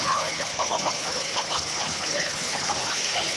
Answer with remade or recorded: remade